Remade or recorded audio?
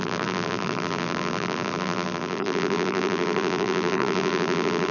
remade